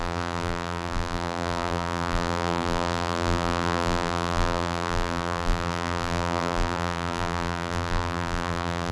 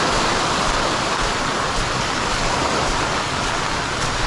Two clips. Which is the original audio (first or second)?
second